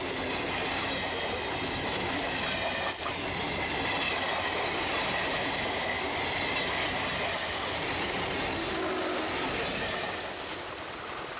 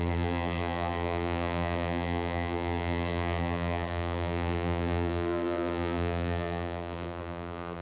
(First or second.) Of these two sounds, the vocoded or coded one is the second